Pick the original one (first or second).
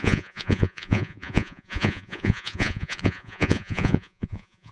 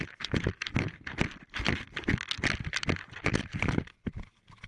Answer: second